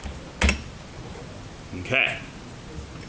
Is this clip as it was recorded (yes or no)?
yes